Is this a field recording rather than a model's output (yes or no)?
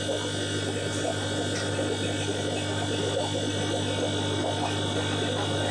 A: yes